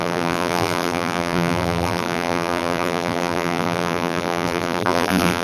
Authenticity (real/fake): fake